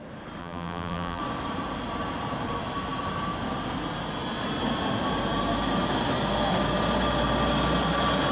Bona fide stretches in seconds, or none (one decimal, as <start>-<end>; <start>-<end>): 0.0-0.4; 1.2-8.3